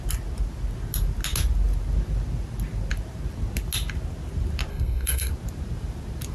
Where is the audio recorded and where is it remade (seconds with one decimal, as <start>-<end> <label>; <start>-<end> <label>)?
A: 0.0-4.7 recorded; 4.7-5.3 remade; 5.3-6.3 recorded